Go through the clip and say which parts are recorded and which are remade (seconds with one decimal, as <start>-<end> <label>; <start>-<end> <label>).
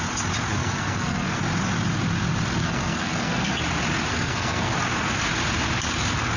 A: 0.0-0.6 recorded; 0.6-1.4 remade; 1.4-2.6 recorded; 2.6-3.6 remade; 3.6-4.1 recorded; 4.1-4.7 remade; 4.7-6.4 recorded